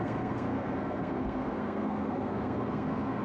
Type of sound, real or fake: fake